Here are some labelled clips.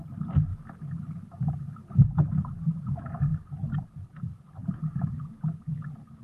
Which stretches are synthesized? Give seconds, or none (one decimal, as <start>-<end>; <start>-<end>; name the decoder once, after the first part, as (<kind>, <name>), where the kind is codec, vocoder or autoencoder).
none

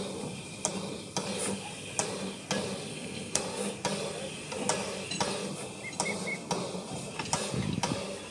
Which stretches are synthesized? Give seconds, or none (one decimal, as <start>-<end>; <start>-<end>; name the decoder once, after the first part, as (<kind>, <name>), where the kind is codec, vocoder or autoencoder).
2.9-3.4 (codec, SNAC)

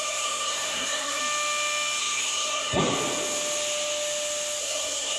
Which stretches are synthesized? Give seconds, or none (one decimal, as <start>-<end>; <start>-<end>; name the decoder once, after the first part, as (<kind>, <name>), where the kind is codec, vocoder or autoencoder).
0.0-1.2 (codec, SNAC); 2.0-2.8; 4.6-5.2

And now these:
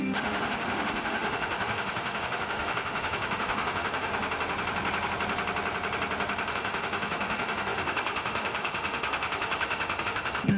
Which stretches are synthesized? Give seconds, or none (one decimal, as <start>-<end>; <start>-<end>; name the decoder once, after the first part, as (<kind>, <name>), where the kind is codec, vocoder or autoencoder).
0.0-4.1 (autoencoder, DAC-VAE); 6.5-10.6

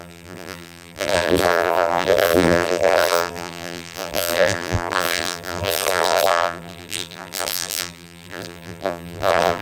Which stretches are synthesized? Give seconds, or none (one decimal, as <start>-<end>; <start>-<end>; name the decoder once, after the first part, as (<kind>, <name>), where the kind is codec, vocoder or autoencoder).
0.0-9.6 (vocoder, BigVGAN v2)

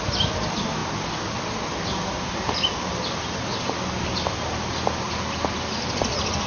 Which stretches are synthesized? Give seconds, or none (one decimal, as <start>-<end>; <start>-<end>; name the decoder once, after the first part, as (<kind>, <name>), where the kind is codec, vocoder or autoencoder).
none